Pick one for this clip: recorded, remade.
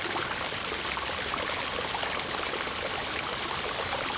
recorded